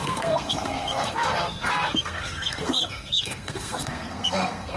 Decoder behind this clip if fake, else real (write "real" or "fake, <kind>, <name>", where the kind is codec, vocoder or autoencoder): fake, codec, SNAC